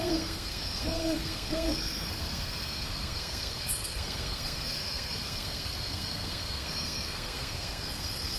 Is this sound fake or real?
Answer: fake